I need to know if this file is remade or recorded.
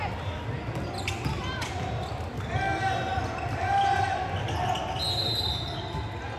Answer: recorded